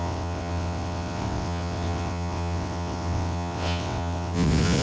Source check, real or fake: fake